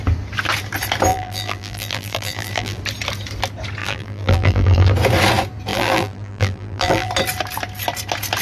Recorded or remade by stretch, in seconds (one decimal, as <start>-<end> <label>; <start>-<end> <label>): 0.0-1.1 recorded; 1.1-2.8 remade; 2.8-3.8 recorded; 3.8-4.9 remade; 4.9-5.7 recorded; 5.7-7.1 remade; 7.1-8.4 recorded